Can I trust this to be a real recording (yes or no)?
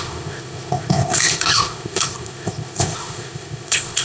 no